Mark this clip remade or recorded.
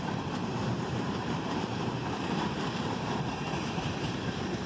remade